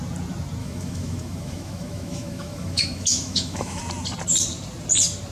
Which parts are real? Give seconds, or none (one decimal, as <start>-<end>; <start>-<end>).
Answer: 0.0-0.6; 3.8-5.3

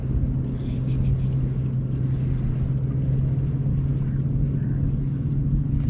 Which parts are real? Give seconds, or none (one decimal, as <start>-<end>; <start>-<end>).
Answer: 0.0-5.9